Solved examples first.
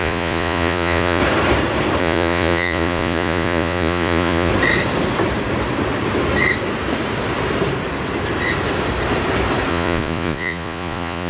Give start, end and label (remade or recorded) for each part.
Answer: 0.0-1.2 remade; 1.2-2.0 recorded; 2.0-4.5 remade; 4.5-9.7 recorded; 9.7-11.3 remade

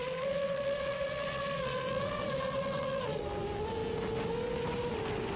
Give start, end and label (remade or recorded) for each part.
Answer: 0.0-3.2 remade; 3.2-5.4 recorded

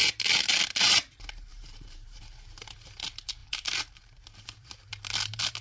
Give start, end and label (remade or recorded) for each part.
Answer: 0.0-1.5 recorded; 1.5-2.2 remade; 2.2-3.4 recorded; 3.4-4.9 remade; 4.9-5.6 recorded

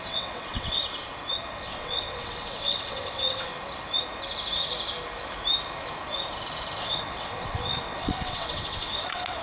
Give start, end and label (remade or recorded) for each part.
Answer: 0.0-0.8 remade; 0.8-1.5 recorded; 1.5-3.5 remade; 3.5-6.8 recorded; 6.8-9.4 remade

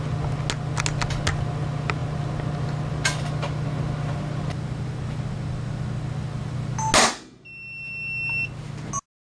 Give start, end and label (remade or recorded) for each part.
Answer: 0.0-9.4 recorded

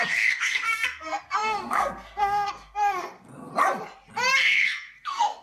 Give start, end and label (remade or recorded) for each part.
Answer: 0.0-3.5 remade; 3.5-4.4 recorded; 4.4-5.4 remade

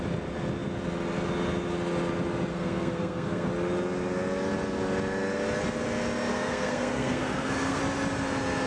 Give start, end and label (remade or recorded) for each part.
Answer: 0.0-2.5 recorded; 2.5-3.5 remade; 3.5-6.3 recorded; 6.3-7.8 remade; 7.8-8.7 recorded

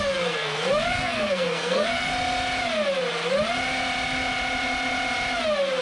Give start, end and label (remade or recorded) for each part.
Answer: 0.0-2.1 remade; 2.1-5.8 recorded